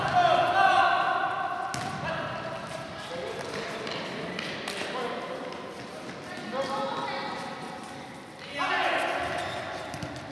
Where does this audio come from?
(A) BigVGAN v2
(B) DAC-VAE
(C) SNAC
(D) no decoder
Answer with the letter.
D